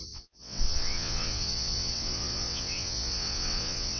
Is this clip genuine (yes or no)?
no